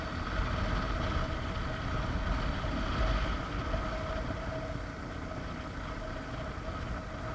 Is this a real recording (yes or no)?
yes